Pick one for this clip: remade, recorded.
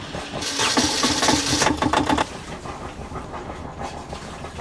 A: recorded